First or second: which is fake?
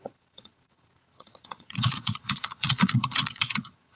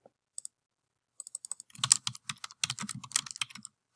first